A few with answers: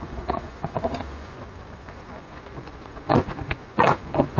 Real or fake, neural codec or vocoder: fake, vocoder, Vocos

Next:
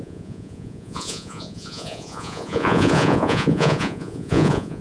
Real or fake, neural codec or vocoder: fake, vocoder, Vocos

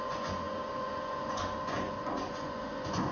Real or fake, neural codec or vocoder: fake, vocoder, Vocos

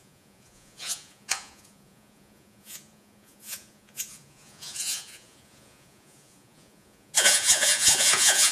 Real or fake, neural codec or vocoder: fake, vocoder, Vocos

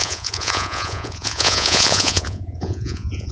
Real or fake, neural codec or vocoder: fake, vocoder, Vocos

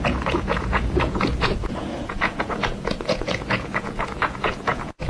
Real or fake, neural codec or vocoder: fake, vocoder, Vocos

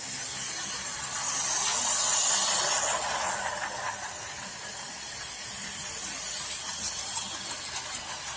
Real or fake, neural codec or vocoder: real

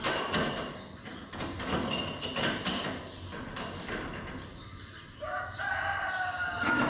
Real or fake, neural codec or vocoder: real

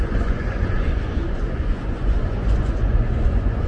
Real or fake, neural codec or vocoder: fake, vocoder, Vocos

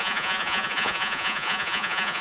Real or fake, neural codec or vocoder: fake, vocoder, Vocos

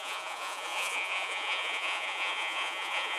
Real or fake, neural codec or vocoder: fake, vocoder, Vocos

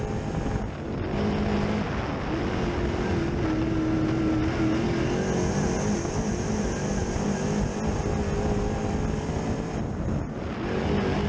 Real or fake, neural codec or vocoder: real